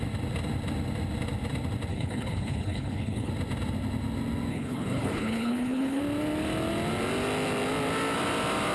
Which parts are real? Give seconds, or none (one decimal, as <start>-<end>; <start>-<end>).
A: 0.0-1.9; 3.3-4.5; 6.0-8.7